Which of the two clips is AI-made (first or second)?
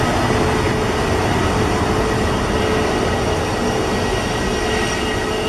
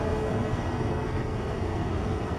second